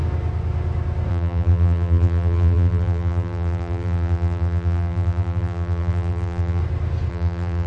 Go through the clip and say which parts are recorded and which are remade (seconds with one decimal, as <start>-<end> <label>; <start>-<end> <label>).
0.0-1.1 recorded; 1.1-6.6 remade; 6.6-7.1 recorded; 7.1-7.7 remade